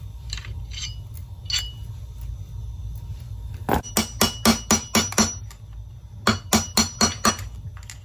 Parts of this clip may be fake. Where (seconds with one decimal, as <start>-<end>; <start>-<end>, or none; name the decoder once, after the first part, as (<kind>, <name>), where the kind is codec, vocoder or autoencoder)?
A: none